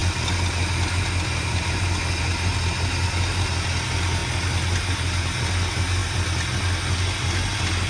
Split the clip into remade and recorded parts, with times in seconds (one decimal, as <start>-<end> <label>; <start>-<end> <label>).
0.0-7.9 recorded